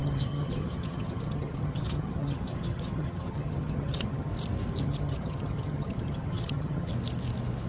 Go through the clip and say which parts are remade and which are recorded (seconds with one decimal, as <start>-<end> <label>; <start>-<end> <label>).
0.0-4.3 remade; 4.3-4.8 recorded; 4.8-6.9 remade; 6.9-7.7 recorded